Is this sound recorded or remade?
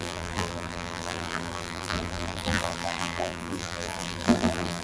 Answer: remade